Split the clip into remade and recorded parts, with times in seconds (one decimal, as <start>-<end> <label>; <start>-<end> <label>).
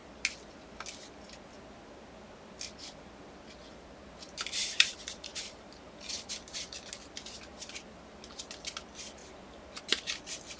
0.0-4.6 recorded; 4.6-6.3 remade; 6.3-9.2 recorded; 9.2-9.8 remade; 9.8-10.6 recorded